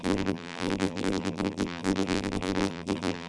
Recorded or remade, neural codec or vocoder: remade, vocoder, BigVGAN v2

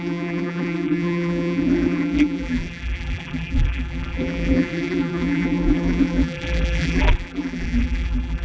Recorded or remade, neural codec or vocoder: remade, vocoder, BigVGAN v2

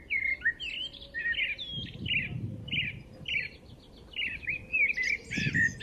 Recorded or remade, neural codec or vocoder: recorded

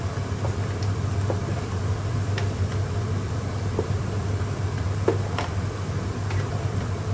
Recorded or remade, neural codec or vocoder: remade, vocoder, BigVGAN v2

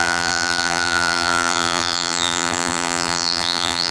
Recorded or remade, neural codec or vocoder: remade, vocoder, BigVGAN v2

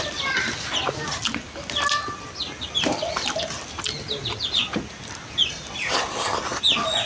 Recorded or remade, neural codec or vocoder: recorded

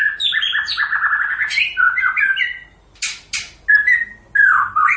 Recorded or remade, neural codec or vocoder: recorded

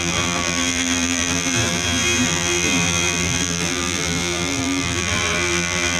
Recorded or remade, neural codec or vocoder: remade, vocoder, BigVGAN v2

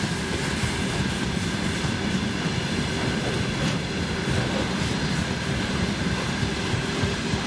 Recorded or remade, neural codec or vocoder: remade, vocoder, BigVGAN v2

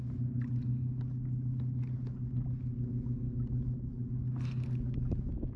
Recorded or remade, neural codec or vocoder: recorded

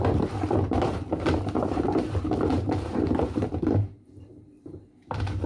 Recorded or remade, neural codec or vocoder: remade, vocoder, BigVGAN v2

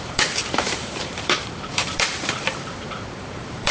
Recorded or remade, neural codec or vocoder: remade, vocoder, BigVGAN v2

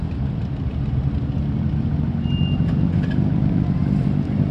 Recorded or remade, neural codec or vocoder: recorded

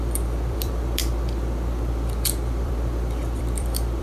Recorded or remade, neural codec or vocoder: remade, vocoder, BigVGAN v2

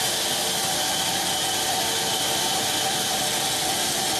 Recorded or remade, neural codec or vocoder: recorded